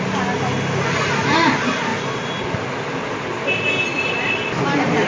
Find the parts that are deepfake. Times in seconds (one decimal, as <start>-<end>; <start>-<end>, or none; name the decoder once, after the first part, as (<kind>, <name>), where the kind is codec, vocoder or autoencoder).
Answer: 1.9-2.4 (vocoder, BigVGAN v2); 3.9-4.6